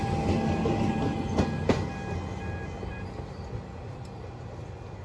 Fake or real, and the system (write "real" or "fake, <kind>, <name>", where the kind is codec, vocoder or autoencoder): real